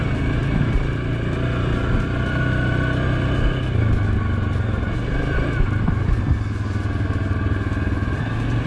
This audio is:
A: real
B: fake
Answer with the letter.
A